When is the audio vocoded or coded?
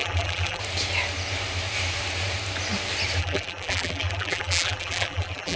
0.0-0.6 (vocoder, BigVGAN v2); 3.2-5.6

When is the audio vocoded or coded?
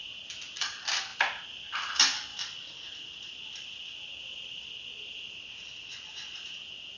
none